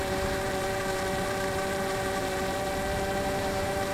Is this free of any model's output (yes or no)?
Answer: no